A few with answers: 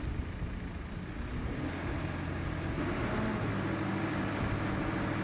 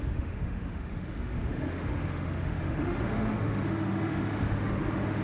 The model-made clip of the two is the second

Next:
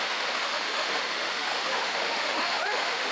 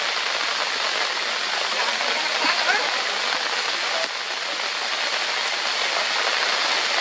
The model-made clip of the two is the first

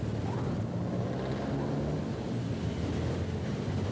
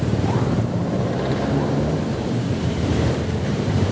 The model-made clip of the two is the second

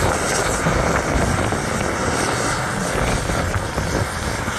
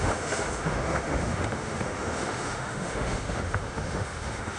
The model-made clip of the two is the second